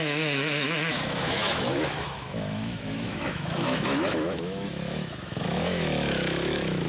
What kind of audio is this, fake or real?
fake